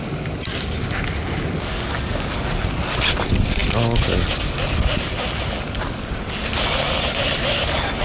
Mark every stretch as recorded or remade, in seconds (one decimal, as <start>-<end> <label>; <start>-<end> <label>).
0.0-8.0 recorded